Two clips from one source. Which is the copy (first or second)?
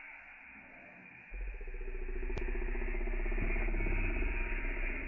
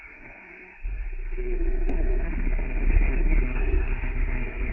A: second